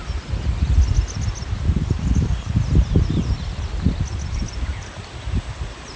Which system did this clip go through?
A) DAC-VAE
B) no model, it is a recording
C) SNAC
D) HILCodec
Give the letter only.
B